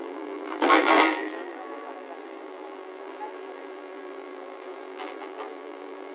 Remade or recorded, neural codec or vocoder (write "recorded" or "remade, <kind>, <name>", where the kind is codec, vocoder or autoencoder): remade, vocoder, BigVGAN v2